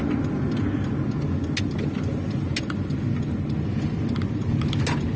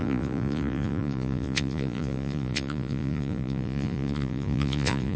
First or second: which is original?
first